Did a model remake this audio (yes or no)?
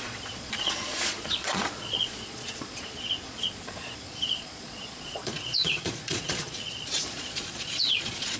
yes